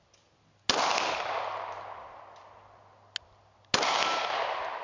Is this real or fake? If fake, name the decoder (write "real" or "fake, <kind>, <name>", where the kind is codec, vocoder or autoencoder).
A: real